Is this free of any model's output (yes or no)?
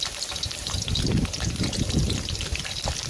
yes